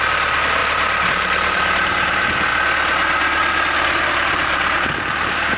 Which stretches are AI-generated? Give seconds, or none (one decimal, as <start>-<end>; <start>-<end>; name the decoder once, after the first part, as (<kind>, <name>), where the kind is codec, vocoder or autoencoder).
0.0-2.5 (vocoder, BigVGAN v2); 4.1-5.6